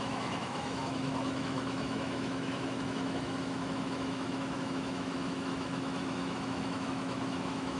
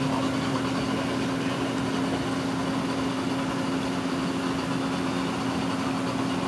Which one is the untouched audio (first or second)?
second